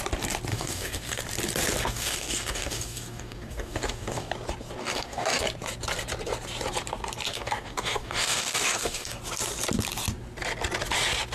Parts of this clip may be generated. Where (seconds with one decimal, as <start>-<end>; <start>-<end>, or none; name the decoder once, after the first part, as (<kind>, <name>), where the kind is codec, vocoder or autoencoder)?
0.5-1.2 (codec, DAC); 1.8-4.3; 4.8-5.4; 7.3-9.2